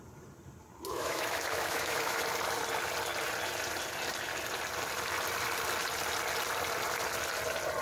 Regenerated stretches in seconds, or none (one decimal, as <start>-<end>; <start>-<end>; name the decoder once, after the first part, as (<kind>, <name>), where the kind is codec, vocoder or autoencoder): 0.9-2.2 (autoencoder, DAC-VAE)